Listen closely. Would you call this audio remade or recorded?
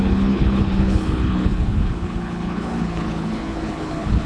remade